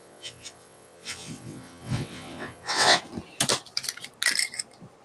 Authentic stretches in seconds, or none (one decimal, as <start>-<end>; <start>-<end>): 3.0-5.0